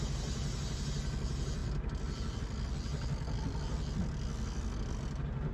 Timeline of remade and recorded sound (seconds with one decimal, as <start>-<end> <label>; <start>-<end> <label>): 0.0-5.5 recorded